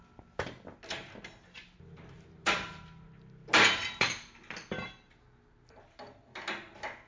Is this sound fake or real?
real